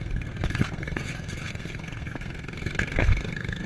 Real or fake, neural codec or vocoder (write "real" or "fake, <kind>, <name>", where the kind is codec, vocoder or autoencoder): fake, codec, SNAC